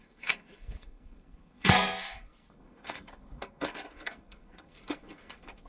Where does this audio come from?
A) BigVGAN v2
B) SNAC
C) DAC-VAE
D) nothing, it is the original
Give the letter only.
B